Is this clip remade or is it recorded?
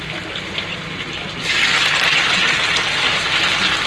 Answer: recorded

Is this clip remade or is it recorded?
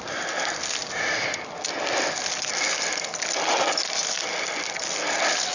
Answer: recorded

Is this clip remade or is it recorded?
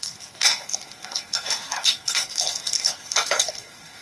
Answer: remade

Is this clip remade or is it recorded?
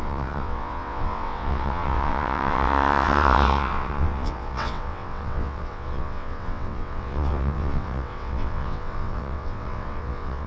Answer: remade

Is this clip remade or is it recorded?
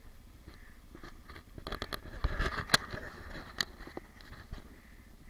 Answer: recorded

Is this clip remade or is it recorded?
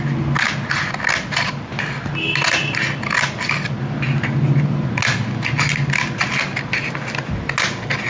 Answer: recorded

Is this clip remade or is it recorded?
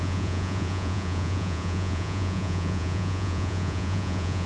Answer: remade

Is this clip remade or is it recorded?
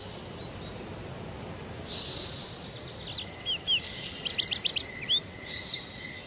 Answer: recorded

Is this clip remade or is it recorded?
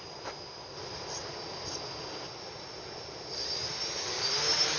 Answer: recorded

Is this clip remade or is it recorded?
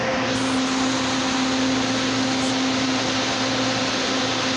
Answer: recorded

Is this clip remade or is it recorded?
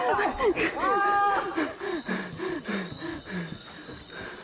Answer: recorded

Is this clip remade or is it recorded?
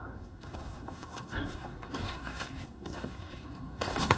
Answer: remade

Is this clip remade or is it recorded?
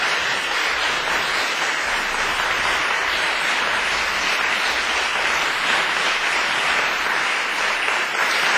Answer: recorded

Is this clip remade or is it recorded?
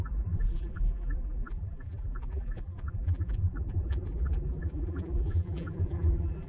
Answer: remade